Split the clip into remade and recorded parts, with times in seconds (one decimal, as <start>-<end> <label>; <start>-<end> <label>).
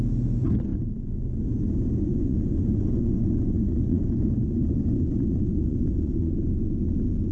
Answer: 0.0-2.1 recorded; 2.1-6.3 remade; 6.3-7.3 recorded